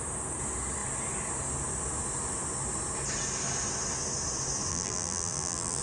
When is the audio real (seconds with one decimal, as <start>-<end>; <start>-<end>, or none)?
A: 0.0-4.7